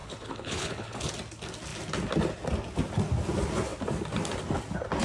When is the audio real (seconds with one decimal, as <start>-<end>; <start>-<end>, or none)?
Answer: 1.1-5.0